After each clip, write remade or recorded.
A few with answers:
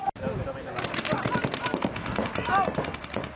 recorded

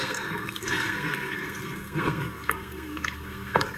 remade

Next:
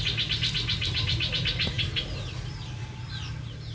recorded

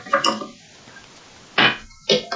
recorded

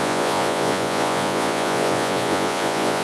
remade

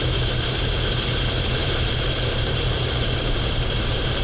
remade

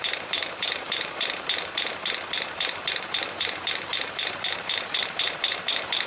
remade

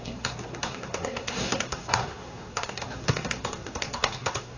remade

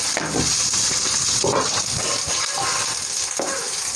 recorded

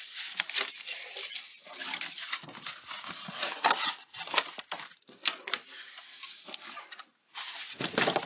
recorded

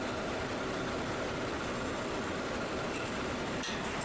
remade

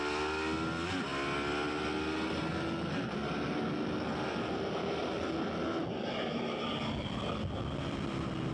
recorded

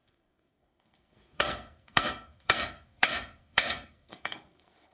remade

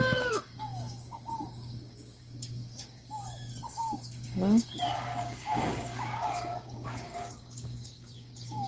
remade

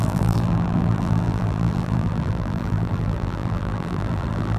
remade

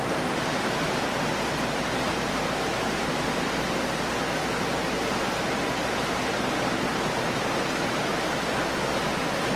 recorded